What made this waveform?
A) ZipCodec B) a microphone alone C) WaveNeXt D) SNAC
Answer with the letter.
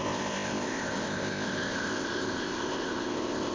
A